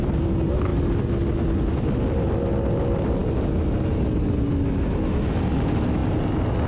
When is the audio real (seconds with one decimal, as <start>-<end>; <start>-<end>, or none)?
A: 0.0-6.7

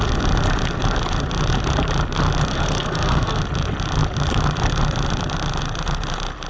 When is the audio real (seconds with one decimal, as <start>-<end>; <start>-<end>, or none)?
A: 0.0-2.5; 3.4-6.5

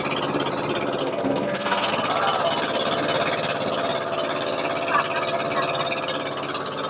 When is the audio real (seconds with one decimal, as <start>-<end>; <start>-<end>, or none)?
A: 0.0-1.0; 1.9-6.9

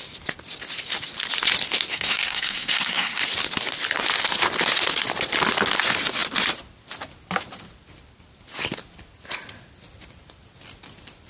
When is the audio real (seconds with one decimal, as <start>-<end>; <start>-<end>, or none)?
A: 0.0-1.9; 3.2-11.3